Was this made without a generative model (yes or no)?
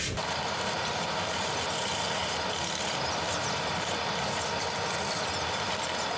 yes